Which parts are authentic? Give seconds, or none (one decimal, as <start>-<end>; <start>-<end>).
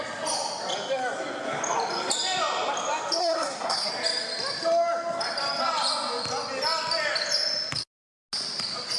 0.0-3.2; 3.9-9.0